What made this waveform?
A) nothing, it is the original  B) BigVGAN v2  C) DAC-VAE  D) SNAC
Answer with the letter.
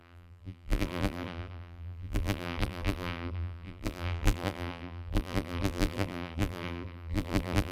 B